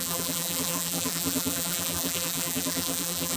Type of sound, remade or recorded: remade